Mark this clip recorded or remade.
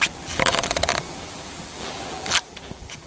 remade